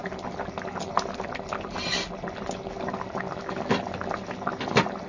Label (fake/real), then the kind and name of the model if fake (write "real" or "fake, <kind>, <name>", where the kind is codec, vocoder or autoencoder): real